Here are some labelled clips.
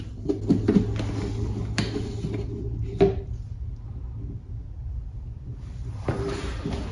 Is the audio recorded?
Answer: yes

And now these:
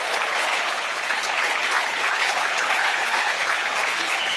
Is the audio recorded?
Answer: no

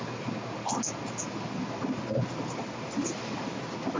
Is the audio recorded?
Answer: yes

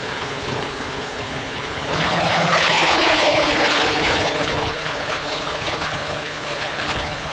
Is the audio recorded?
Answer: no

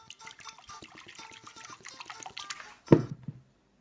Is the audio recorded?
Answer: yes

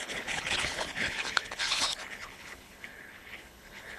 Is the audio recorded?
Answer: no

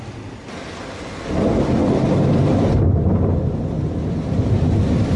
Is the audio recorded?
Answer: yes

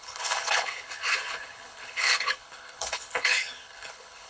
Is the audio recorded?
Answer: no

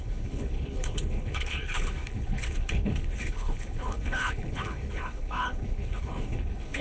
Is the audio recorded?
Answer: no